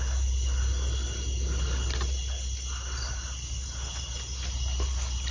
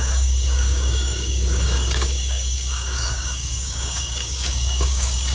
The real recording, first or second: first